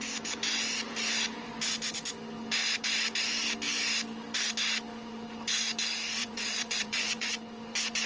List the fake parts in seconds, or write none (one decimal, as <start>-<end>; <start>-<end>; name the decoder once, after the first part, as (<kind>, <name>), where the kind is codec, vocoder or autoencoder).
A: 6.2-7.3 (vocoder, Vocos)